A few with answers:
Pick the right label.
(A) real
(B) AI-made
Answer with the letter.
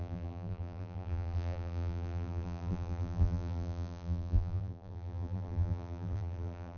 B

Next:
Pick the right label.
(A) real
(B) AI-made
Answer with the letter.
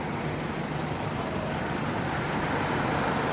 A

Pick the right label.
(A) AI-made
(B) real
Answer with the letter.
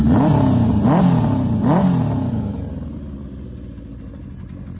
B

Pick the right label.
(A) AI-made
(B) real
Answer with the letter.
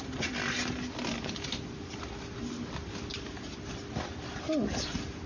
B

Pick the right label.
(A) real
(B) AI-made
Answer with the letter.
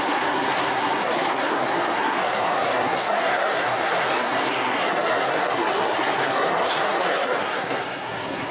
B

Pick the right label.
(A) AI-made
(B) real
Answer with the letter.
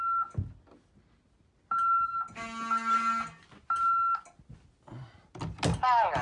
B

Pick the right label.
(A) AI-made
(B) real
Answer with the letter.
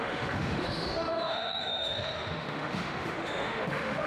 A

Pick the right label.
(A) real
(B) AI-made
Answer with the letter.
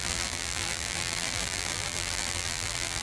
B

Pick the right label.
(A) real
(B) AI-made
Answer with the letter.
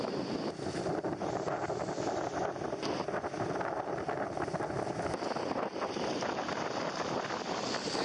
A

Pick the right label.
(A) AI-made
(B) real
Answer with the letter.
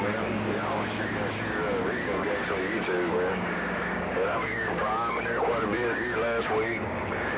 A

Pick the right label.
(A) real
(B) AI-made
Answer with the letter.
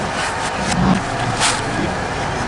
A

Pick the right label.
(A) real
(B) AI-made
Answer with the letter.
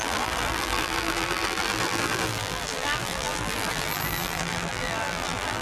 B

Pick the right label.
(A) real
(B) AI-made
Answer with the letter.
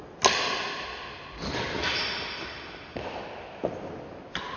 A